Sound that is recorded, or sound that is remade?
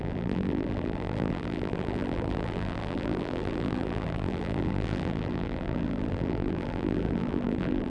remade